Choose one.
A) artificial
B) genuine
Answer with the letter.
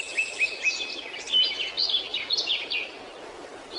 B